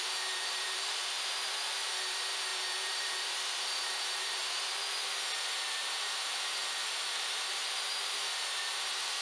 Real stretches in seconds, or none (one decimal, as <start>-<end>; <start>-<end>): 4.4-5.7; 6.3-6.9